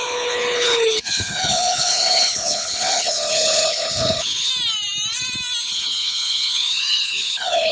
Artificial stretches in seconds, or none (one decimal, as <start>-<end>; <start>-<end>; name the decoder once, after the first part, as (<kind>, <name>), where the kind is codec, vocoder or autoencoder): 0.0-4.5 (codec, HILCodec); 5.6-7.7